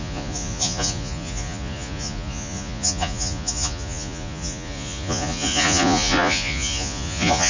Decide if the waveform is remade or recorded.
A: remade